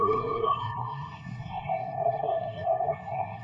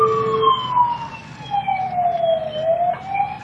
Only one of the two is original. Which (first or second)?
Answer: second